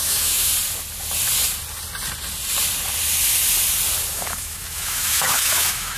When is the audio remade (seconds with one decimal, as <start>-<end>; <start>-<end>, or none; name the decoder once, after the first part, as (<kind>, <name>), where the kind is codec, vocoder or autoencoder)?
0.0-0.5 (autoencoder, DAC-VAE); 4.1-6.0